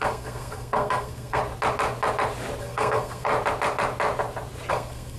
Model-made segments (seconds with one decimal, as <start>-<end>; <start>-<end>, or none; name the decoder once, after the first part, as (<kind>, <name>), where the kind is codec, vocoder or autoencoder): 0.0-1.4 (codec, SNAC); 2.6-3.3; 4.7-5.2